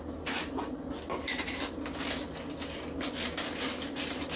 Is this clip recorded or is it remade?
recorded